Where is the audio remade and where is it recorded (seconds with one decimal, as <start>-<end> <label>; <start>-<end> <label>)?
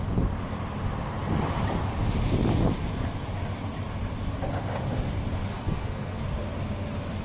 0.0-5.5 recorded; 5.5-6.2 remade; 6.2-7.2 recorded